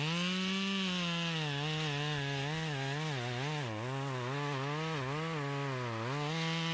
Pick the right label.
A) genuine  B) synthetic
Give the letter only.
A